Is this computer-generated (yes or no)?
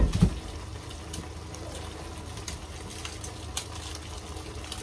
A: no